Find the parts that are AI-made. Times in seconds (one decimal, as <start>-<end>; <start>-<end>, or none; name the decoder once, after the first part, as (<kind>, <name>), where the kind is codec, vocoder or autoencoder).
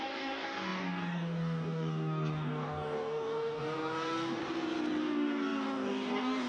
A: 0.0-4.4 (codec, DAC); 5.0-6.5